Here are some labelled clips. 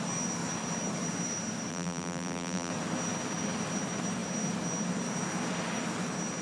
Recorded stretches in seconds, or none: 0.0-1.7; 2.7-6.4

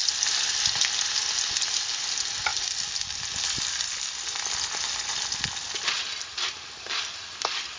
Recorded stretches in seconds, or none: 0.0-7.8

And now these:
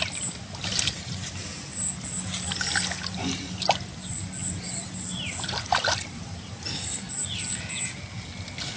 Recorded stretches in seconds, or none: 0.0-4.4; 7.1-8.8

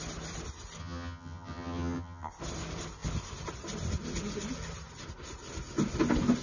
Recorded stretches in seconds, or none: 0.0-0.8; 2.3-6.4

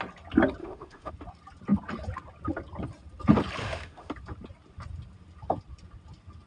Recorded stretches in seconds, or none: 0.0-0.6; 1.1-3.6; 4.1-6.5